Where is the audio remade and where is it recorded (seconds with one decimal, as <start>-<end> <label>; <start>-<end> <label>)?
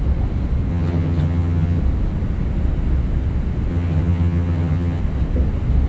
0.0-0.7 recorded; 0.7-1.8 remade; 1.8-3.7 recorded; 3.7-5.0 remade; 5.0-5.9 recorded